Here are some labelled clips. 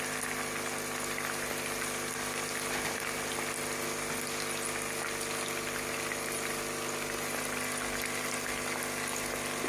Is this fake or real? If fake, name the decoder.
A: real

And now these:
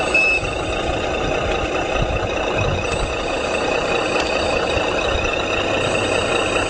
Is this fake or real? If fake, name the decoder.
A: real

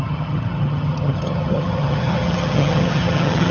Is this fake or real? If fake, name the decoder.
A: fake, vocoder, HiFi-GAN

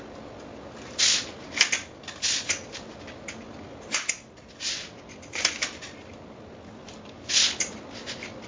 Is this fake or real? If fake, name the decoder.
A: real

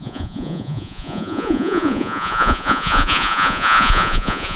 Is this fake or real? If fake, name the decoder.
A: fake, vocoder, Vocos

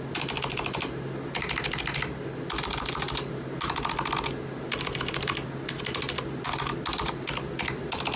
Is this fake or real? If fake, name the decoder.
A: real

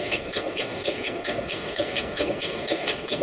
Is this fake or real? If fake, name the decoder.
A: fake, codec, SNAC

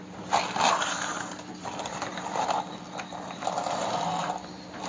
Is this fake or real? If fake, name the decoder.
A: fake, vocoder, BigVGAN v2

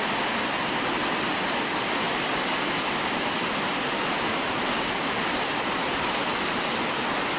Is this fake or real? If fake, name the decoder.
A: real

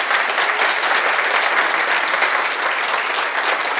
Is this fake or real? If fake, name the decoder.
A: real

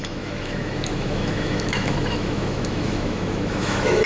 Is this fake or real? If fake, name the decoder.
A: fake, autoencoder, DAC-VAE